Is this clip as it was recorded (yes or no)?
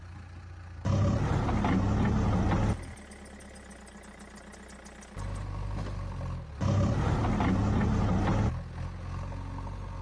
yes